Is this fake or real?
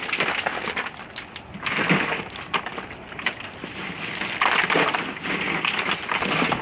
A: real